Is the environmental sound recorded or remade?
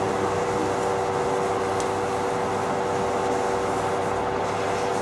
recorded